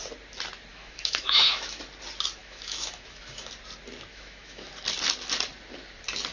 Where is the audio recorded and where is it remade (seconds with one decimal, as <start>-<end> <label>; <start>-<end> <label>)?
0.0-0.7 recorded; 0.7-1.8 remade; 1.8-2.4 recorded; 2.4-3.5 remade; 3.5-4.1 recorded; 4.1-4.7 remade; 4.7-6.3 recorded

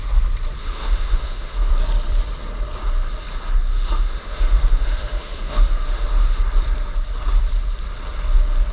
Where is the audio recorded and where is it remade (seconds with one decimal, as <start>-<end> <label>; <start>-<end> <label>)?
0.0-0.6 recorded; 0.6-1.7 remade; 1.7-3.7 recorded; 3.7-6.4 remade; 6.4-8.7 recorded

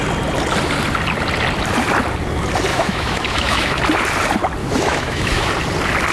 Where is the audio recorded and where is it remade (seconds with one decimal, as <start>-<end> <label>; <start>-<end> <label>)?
0.0-2.7 recorded; 2.7-3.8 remade; 3.8-4.6 recorded; 4.6-5.5 remade; 5.5-6.1 recorded

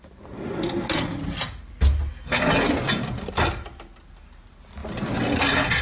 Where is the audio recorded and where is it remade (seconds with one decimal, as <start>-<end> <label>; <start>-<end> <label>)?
0.0-5.8 recorded

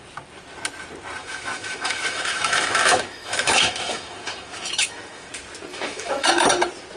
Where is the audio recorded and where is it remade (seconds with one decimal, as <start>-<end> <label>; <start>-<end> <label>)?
0.0-1.2 recorded; 1.2-5.3 remade; 5.3-5.7 recorded; 5.7-6.3 remade; 6.3-7.0 recorded

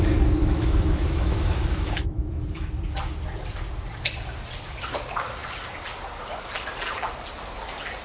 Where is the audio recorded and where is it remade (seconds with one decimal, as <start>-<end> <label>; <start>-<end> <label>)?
0.0-0.4 recorded; 0.4-2.7 remade; 2.7-8.0 recorded